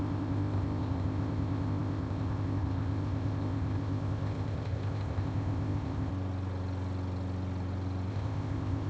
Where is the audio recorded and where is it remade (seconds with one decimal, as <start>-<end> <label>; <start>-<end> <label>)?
0.0-6.1 remade; 6.1-8.1 recorded; 8.1-8.9 remade